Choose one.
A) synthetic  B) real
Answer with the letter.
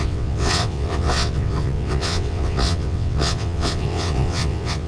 A